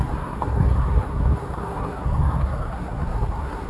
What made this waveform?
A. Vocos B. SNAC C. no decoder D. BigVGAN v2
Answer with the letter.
B